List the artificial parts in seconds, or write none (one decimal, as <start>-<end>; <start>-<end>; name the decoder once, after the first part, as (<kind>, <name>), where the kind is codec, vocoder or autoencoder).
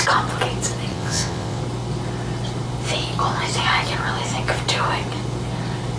0.9-1.6 (vocoder, WaveNeXt)